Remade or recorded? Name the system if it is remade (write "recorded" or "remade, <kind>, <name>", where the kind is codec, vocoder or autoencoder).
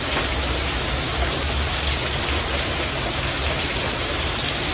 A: recorded